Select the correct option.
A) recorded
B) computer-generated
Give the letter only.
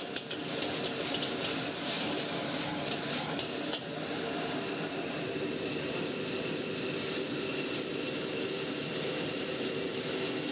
A